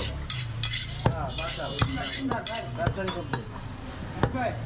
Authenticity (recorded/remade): recorded